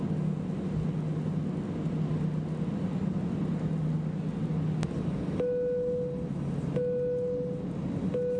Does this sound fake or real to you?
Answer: real